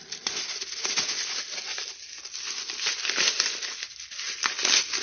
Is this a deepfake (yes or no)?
no